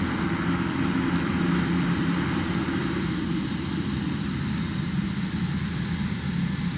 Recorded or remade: recorded